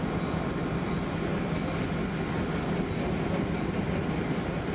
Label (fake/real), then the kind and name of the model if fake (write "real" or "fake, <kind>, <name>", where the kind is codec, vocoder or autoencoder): real